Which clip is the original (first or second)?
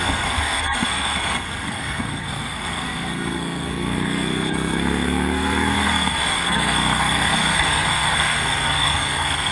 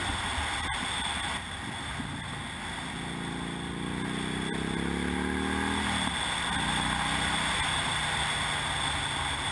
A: second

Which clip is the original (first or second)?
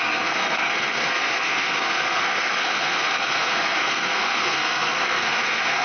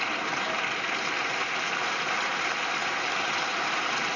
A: second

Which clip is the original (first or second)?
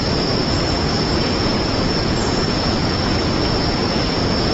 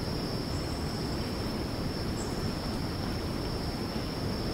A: second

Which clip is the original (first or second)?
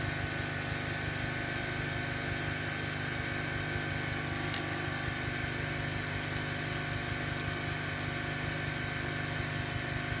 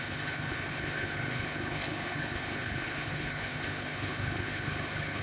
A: first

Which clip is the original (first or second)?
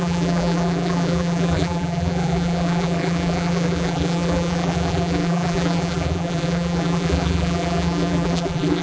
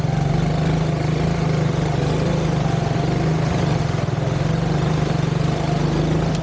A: second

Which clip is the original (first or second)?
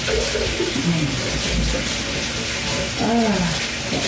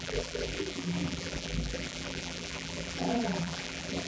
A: first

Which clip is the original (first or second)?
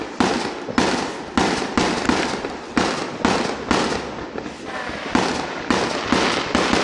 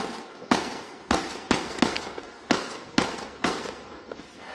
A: first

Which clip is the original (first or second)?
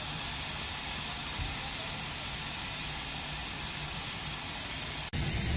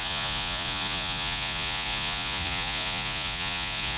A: first